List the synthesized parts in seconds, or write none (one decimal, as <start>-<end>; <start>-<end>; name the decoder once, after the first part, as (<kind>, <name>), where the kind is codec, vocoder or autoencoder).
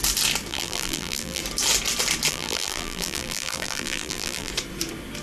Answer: 0.5-1.4 (vocoder, BigVGAN v2); 2.3-4.5